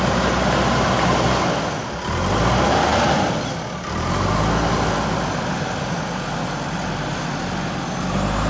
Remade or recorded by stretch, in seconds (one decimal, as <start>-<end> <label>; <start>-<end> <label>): 0.0-8.5 recorded